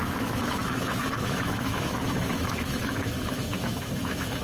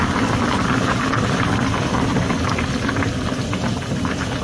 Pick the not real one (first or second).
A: first